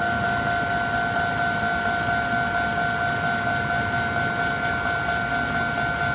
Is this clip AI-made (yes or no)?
no